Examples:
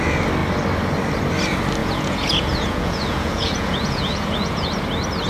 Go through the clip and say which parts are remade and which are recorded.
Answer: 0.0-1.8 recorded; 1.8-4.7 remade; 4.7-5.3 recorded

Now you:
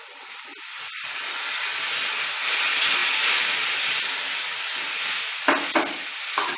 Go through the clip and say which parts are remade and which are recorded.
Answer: 0.0-0.5 recorded; 0.5-1.6 remade; 1.6-6.6 recorded

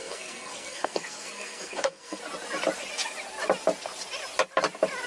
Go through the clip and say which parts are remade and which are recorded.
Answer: 0.0-2.2 remade; 2.2-5.1 recorded

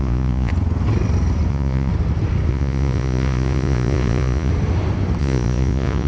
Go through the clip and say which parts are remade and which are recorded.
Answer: 0.0-0.5 remade; 0.5-1.5 recorded; 1.5-1.9 remade; 1.9-2.5 recorded; 2.5-4.5 remade; 4.5-5.2 recorded; 5.2-6.1 remade

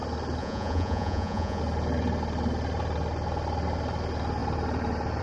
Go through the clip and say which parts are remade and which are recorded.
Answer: 0.0-0.4 recorded; 0.4-1.6 remade; 1.6-5.2 recorded

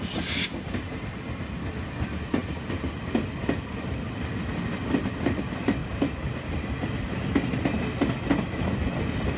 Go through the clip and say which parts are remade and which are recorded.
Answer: 0.0-9.4 recorded

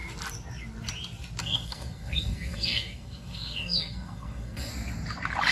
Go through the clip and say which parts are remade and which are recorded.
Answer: 0.0-1.4 recorded; 1.4-4.7 remade; 4.7-5.5 recorded